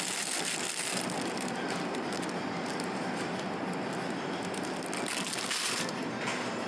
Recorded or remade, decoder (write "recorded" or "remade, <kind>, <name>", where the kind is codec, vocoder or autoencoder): recorded